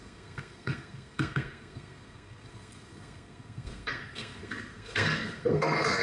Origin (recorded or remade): remade